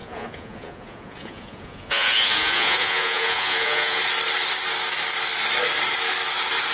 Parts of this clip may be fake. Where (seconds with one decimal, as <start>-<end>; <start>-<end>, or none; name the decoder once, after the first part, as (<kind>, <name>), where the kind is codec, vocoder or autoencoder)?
0.0-4.0 (vocoder, Vocos)